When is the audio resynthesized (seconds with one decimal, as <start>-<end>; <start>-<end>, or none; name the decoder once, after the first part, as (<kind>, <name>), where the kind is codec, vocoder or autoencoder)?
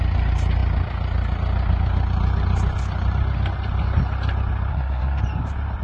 4.7-5.2 (codec, SNAC)